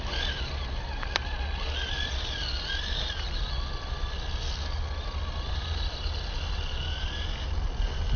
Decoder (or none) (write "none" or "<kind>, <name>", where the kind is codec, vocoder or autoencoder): none